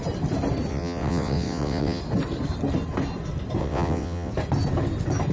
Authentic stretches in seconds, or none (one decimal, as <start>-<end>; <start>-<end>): 0.0-0.7; 2.0-3.6; 4.3-5.3